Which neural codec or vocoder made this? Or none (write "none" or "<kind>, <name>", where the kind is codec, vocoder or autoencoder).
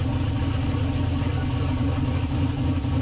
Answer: none